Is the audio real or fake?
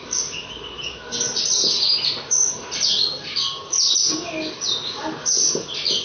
real